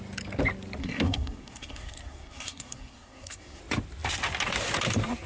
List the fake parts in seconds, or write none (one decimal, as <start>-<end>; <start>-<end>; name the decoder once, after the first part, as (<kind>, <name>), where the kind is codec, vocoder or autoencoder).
0.8-3.6 (codec, SNAC)